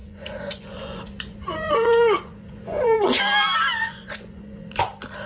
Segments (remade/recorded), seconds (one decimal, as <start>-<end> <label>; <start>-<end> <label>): 0.0-3.2 remade; 3.2-3.7 recorded; 3.7-4.8 remade; 4.8-5.3 recorded